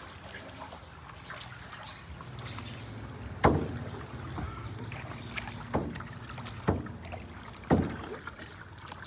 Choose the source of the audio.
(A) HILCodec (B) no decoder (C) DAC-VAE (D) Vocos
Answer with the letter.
B